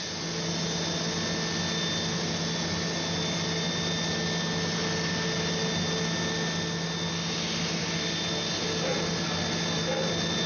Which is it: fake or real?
real